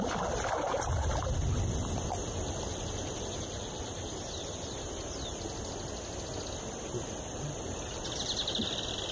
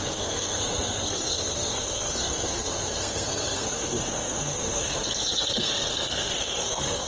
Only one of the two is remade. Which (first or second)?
second